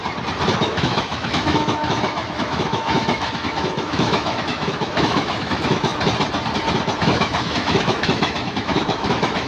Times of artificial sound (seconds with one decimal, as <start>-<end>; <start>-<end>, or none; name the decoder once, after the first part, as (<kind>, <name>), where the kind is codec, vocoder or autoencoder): 0.6-5.9 (autoencoder, DAC-VAE); 7.0-9.5

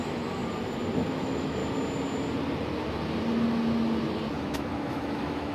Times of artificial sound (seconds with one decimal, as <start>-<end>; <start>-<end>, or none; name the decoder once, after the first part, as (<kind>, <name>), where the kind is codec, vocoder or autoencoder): 0.0-0.4 (autoencoder, DAC-VAE); 1.1-1.6; 4.4-5.5

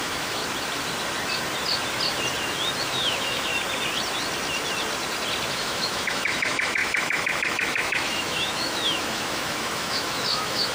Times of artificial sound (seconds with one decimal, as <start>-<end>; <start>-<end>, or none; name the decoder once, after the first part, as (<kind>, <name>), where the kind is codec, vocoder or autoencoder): 0.0-0.4 (autoencoder, DAC-VAE); 2.8-3.5; 5.5-10.7